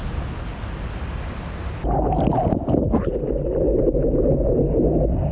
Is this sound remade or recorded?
recorded